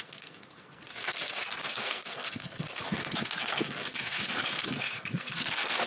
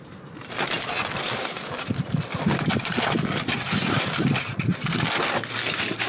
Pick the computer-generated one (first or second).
first